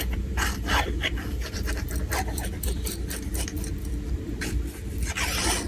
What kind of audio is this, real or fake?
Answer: fake